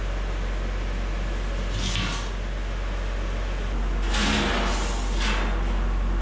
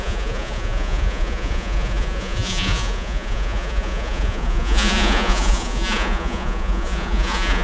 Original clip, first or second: first